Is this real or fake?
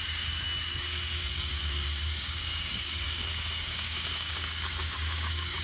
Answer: fake